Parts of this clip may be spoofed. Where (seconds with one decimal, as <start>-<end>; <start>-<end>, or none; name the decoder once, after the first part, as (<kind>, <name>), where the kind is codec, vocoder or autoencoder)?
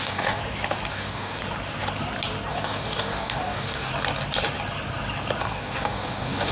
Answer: 0.0-0.4 (codec, DAC); 0.9-1.4; 2.5-3.9; 5.5-6.5